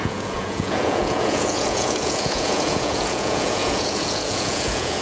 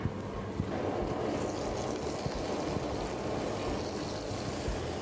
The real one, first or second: second